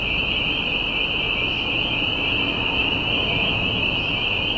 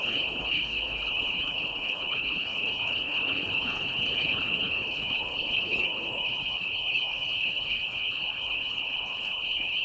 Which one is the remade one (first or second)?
second